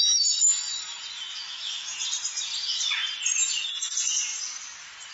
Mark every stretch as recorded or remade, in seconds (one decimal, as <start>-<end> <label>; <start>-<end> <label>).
0.0-0.7 remade; 0.7-1.3 recorded; 1.3-1.9 remade; 1.9-5.1 recorded